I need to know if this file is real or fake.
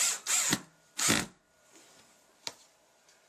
real